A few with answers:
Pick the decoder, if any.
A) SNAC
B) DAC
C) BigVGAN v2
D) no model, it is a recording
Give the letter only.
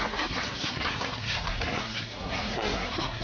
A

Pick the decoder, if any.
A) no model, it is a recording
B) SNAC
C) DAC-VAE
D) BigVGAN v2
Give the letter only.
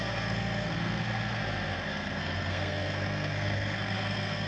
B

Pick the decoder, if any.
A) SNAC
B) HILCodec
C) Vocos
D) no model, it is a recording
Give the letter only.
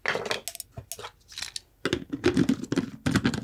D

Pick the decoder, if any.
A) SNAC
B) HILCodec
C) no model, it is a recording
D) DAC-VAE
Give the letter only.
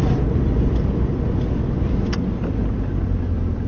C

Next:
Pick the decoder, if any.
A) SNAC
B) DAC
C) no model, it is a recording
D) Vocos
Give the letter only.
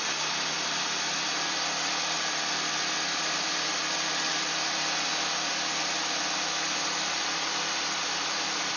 C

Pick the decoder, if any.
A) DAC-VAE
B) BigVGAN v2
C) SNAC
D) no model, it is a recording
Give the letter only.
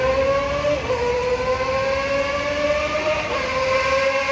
D